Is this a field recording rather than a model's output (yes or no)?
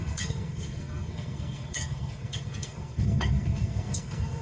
no